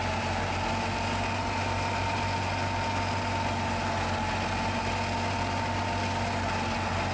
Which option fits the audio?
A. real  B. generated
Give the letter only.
A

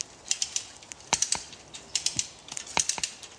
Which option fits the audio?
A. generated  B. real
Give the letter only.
B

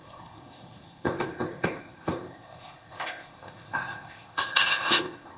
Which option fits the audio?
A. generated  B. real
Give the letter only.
A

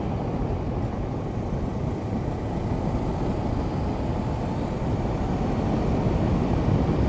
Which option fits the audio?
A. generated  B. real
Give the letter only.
B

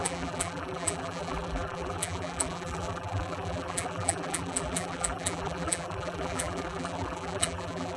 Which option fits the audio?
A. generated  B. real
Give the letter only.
A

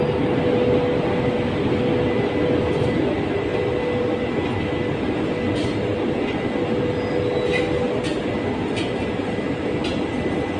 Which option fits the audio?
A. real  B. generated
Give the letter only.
A